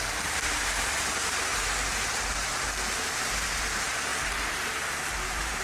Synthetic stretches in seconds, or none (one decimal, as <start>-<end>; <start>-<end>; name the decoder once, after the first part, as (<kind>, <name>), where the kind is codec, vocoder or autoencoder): 0.0-2.3 (vocoder, BigVGAN v2); 3.0-5.6